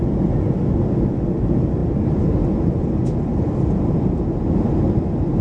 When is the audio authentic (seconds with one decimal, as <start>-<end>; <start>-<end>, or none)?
0.0-5.4